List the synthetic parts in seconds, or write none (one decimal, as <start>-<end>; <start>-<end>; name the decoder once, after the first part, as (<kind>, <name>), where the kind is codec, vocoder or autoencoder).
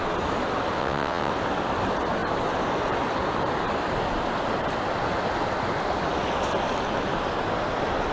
0.8-1.3 (vocoder, WaveNeXt)